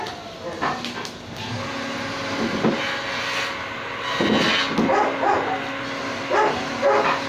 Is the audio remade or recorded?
recorded